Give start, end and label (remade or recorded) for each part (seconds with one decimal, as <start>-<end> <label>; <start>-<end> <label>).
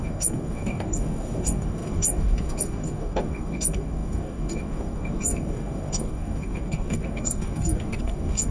0.0-8.5 remade